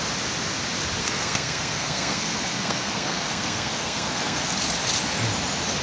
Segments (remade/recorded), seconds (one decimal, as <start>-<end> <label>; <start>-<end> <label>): 0.0-1.0 recorded; 1.0-4.5 remade; 4.5-5.8 recorded